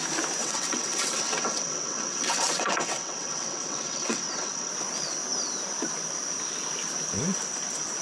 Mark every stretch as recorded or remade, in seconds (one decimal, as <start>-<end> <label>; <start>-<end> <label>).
0.0-0.4 recorded; 0.4-4.7 remade; 4.7-8.0 recorded